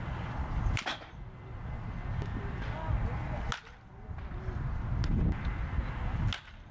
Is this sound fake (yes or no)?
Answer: no